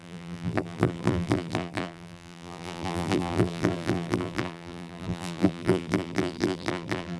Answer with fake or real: fake